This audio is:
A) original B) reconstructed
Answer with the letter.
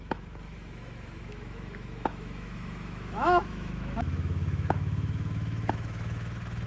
B